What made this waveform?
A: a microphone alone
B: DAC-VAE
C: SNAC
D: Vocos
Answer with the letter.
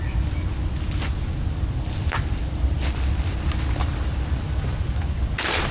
A